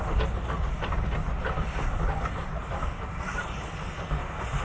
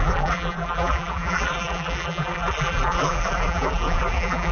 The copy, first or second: second